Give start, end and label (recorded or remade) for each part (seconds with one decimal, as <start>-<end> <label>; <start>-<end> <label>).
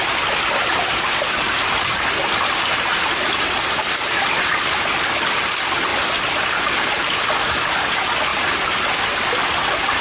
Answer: 0.0-2.9 recorded; 2.9-5.3 remade; 5.3-5.9 recorded; 5.9-6.6 remade; 6.6-8.3 recorded; 8.3-8.8 remade; 8.8-10.0 recorded